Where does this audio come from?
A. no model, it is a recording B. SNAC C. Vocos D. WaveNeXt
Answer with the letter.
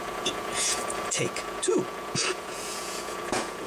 C